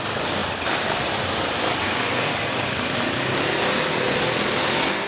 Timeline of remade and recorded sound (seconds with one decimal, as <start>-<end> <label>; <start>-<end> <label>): 0.0-5.1 recorded